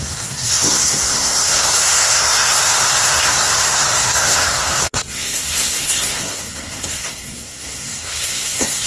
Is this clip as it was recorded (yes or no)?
no